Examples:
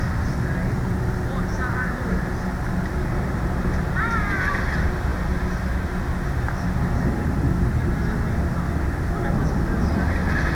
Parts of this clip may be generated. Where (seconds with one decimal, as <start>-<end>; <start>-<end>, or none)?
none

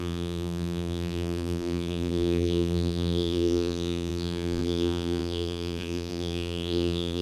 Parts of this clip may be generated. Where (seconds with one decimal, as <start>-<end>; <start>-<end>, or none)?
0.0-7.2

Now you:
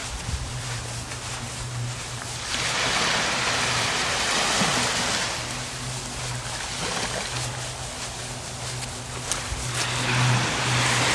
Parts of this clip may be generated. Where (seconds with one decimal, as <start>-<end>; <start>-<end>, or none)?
0.0-4.3

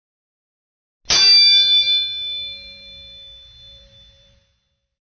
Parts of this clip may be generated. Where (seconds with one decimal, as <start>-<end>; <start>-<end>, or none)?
none

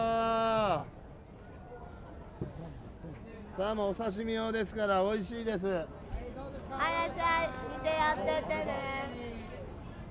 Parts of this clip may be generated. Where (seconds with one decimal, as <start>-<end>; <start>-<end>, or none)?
0.8-1.8